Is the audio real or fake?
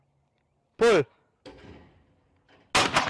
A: real